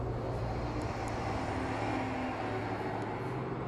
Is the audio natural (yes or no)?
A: yes